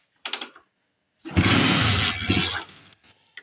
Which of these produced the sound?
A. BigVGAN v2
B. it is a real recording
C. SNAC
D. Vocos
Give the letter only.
B